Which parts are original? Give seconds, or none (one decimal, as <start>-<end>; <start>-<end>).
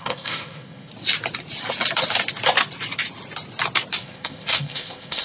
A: 0.9-4.0